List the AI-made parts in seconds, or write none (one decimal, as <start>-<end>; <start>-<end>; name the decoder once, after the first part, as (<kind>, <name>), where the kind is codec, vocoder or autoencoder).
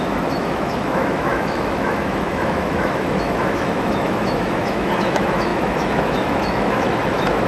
0.0-7.5 (autoencoder, DAC-VAE)